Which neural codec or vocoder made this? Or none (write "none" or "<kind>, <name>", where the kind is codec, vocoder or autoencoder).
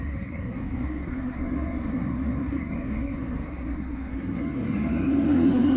codec, SNAC